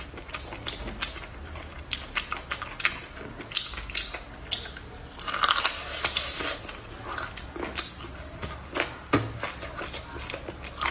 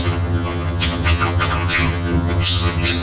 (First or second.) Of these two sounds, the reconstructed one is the second